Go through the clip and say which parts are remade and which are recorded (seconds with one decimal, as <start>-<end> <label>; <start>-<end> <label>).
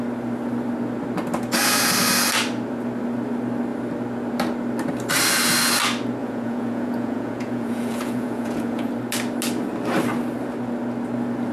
0.0-6.2 recorded; 6.2-8.9 remade; 8.9-11.5 recorded